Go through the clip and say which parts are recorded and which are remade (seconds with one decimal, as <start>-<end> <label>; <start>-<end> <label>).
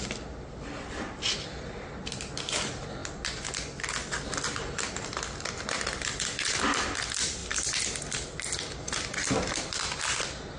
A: 0.0-3.0 remade; 3.0-4.8 recorded; 4.8-7.4 remade; 7.4-8.0 recorded; 8.0-10.6 remade